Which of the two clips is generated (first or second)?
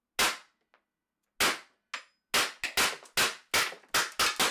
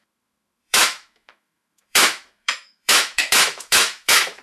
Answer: second